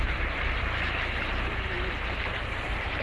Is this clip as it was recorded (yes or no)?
yes